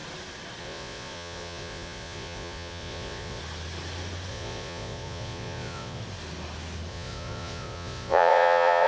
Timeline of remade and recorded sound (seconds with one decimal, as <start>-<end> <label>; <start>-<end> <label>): 0.0-0.6 recorded; 0.6-3.4 remade; 3.4-4.3 recorded; 4.3-6.0 remade; 6.0-6.9 recorded; 6.9-8.9 remade